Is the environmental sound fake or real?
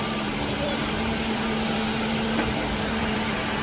fake